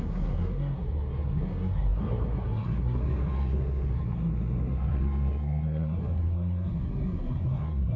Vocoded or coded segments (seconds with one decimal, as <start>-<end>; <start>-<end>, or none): 0.0-8.0